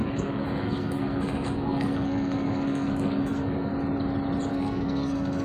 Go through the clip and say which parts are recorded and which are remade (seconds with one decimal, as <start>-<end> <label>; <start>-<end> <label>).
0.0-3.7 remade; 3.7-4.5 recorded; 4.5-5.4 remade